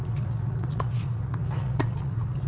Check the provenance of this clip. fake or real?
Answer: fake